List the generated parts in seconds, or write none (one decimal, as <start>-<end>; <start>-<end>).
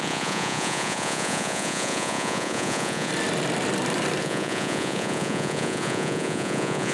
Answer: 0.0-3.1; 4.2-6.9